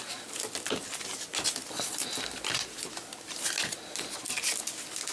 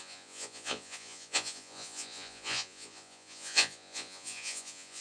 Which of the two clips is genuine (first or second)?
first